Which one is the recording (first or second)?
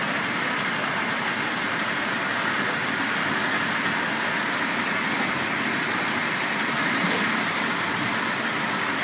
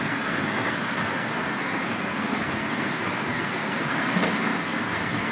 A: first